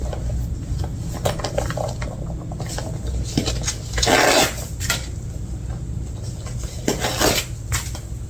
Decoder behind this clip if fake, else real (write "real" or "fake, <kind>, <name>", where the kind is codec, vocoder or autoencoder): real